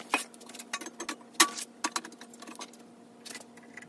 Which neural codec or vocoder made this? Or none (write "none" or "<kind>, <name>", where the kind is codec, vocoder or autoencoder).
none